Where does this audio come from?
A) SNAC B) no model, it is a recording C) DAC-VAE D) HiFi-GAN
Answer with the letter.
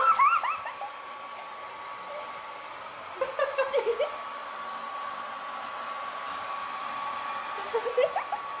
B